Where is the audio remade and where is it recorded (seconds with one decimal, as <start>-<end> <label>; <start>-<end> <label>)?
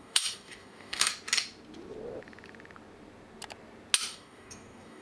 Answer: 0.0-1.1 remade; 1.1-4.1 recorded; 4.1-5.0 remade